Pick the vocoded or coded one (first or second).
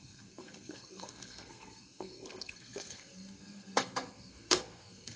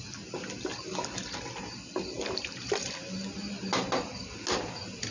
first